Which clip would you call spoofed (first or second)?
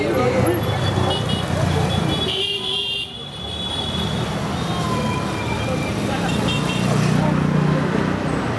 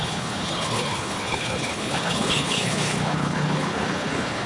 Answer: second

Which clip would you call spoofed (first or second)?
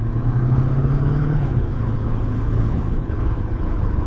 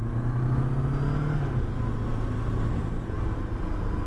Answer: first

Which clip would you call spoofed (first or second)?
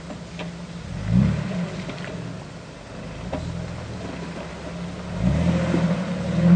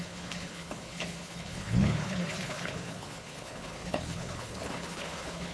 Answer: second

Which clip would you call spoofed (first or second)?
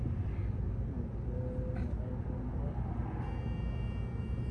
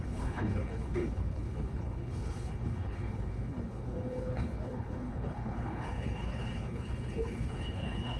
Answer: second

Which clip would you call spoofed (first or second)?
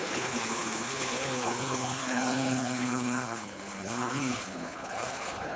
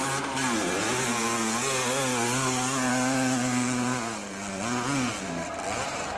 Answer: first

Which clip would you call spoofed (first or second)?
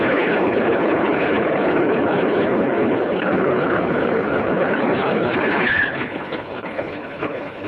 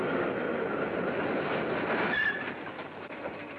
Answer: first